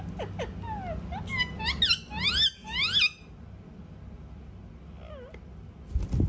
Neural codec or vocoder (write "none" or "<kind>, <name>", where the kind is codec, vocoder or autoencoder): none